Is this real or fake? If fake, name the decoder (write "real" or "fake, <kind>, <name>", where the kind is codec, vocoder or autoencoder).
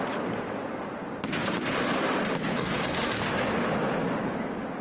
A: real